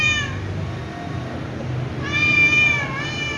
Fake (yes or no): yes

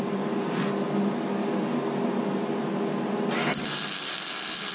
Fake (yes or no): no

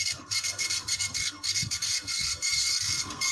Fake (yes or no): yes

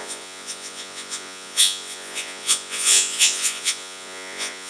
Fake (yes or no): yes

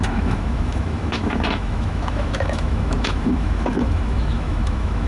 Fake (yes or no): yes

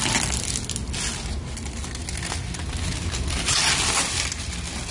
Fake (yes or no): no